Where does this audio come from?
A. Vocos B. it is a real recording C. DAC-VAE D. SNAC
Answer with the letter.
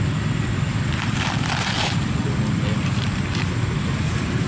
B